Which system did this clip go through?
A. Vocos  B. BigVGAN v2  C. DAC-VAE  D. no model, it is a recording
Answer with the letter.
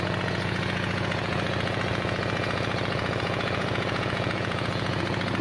A